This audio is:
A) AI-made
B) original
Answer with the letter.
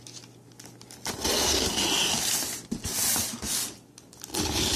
B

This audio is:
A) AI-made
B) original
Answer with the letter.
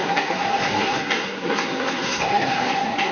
A